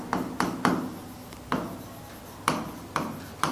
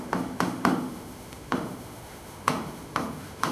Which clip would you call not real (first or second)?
second